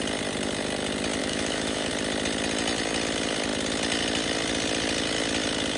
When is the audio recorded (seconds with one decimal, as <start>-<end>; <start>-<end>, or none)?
0.0-1.2; 1.9-5.8